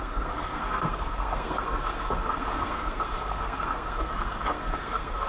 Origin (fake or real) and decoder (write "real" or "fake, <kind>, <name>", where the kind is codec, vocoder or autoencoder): fake, codec, SNAC